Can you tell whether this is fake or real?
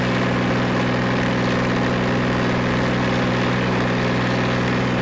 real